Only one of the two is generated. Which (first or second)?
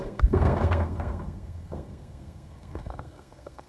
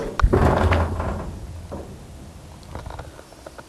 first